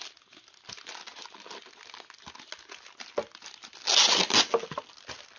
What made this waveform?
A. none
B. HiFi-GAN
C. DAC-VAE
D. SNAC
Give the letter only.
A